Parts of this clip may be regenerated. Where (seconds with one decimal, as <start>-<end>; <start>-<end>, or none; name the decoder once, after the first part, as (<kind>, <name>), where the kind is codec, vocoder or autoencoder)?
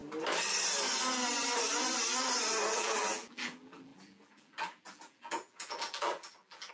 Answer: 2.7-6.7 (vocoder, BigVGAN v2)